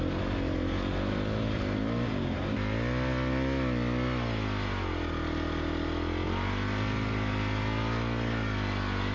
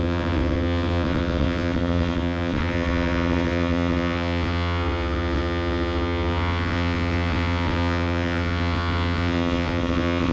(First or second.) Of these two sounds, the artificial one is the second